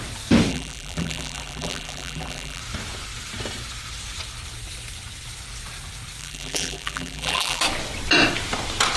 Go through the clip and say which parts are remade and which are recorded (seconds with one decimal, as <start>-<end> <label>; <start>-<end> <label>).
0.0-0.5 recorded; 0.5-2.6 remade; 2.6-6.2 recorded; 6.2-7.6 remade; 7.6-9.0 recorded